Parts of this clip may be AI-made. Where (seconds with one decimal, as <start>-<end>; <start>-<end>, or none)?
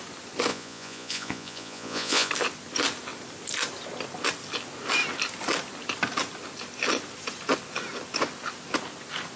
0.5-2.3